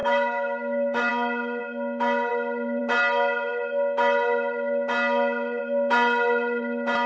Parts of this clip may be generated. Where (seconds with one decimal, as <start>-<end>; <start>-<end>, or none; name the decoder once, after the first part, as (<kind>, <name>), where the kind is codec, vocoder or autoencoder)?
0.0-1.1 (autoencoder, DAC-VAE)